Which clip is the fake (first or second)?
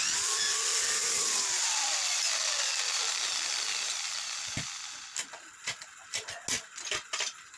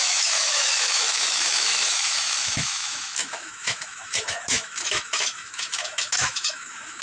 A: second